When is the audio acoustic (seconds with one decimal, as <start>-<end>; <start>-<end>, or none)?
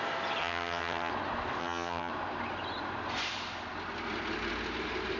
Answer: 0.0-0.4; 1.1-1.6; 2.1-5.2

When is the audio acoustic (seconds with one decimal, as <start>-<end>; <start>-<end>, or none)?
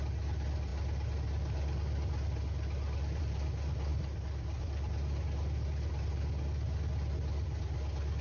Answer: 0.0-3.9; 4.9-8.2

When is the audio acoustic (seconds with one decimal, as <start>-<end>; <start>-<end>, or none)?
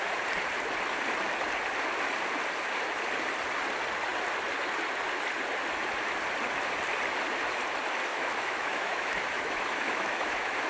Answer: 0.0-8.1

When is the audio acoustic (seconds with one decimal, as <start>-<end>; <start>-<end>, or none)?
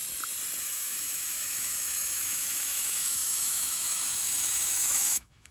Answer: 0.0-0.6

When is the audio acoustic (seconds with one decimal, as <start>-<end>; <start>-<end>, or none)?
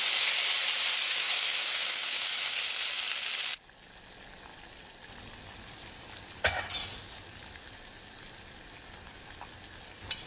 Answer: 0.0-1.0; 2.6-10.3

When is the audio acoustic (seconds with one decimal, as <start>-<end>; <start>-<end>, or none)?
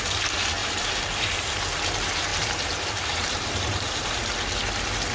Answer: 0.0-0.6; 1.6-2.3; 4.2-5.1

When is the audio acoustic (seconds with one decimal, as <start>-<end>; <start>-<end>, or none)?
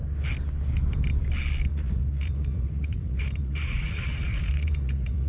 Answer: 0.0-1.7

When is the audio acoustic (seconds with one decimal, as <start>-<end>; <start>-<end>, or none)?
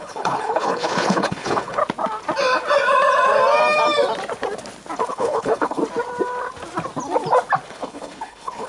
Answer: 1.8-5.1; 5.8-7.7